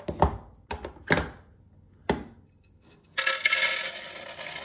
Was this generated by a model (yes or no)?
no